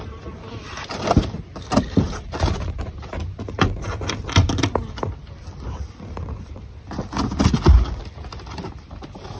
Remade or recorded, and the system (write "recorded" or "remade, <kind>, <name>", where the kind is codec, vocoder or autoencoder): recorded